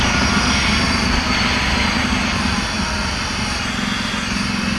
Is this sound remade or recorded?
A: recorded